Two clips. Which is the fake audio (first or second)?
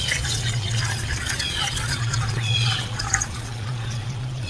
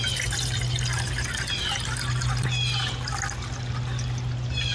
first